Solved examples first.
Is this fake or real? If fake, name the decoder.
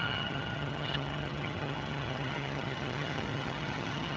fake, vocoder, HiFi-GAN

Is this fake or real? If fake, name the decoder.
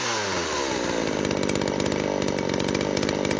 real